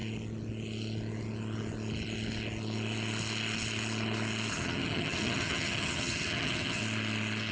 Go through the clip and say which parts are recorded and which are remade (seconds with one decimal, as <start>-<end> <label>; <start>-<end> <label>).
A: 0.0-4.5 recorded; 4.5-6.8 remade; 6.8-7.5 recorded